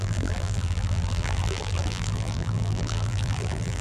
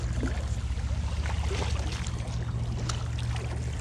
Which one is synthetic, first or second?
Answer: first